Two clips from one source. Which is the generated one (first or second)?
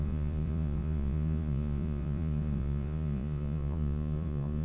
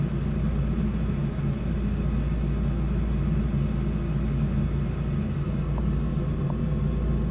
first